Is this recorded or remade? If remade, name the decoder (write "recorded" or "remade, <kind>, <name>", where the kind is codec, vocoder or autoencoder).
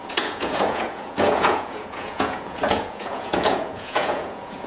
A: remade, vocoder, Vocos